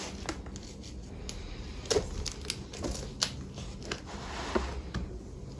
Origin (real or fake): real